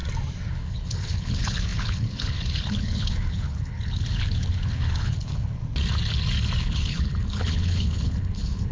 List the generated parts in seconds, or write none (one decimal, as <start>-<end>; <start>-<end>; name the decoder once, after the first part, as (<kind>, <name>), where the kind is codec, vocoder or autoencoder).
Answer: 0.5-5.6 (codec, HILCodec); 6.6-8.7